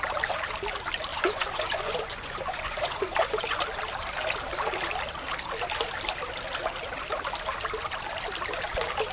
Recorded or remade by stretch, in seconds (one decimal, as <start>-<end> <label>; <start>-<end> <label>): 0.0-1.1 recorded; 1.1-3.6 remade; 3.6-9.1 recorded